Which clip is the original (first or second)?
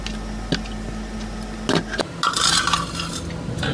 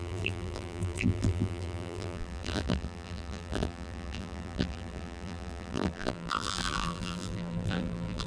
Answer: first